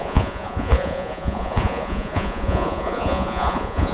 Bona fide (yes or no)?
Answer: no